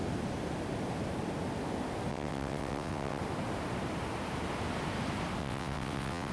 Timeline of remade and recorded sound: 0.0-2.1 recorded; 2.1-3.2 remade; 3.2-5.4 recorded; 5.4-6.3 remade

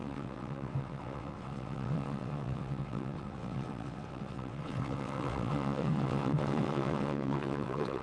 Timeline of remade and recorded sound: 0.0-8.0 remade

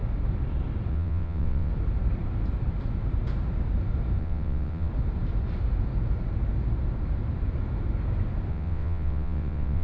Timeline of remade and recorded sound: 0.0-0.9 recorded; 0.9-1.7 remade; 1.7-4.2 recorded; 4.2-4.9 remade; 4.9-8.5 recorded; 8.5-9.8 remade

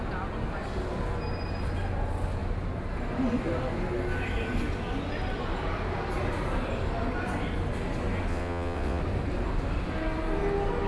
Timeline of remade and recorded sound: 0.0-8.3 recorded; 8.3-9.0 remade; 9.0-10.9 recorded

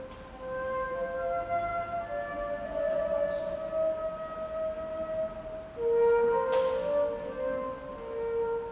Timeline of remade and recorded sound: 0.0-8.7 recorded

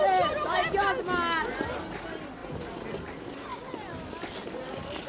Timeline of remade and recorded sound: 0.0-5.1 recorded

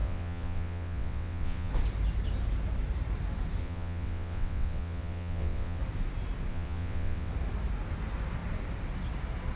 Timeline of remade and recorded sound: 0.0-1.7 remade; 1.7-3.6 recorded; 3.6-5.8 remade; 5.8-6.5 recorded; 6.5-7.3 remade; 7.3-9.6 recorded